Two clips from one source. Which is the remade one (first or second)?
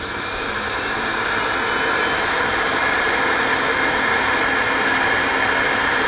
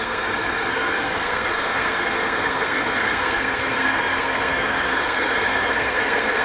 second